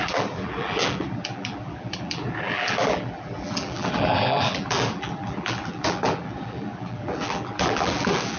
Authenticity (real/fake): fake